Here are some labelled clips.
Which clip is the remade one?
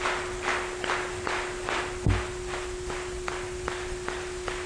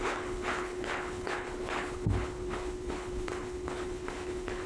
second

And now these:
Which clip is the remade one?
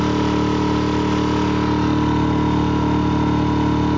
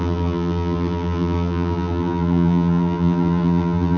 second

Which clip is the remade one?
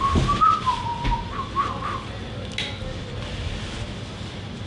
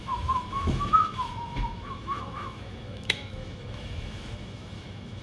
second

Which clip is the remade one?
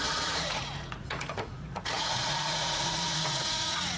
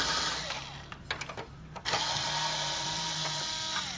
first